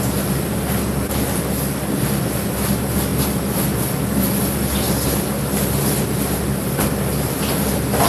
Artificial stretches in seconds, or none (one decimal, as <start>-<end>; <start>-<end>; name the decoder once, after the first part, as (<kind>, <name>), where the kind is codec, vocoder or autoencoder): none